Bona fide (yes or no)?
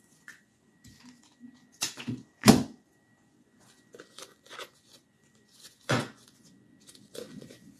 no